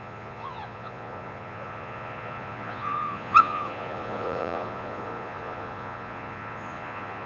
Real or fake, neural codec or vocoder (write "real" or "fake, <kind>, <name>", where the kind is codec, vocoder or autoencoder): fake, vocoder, Vocos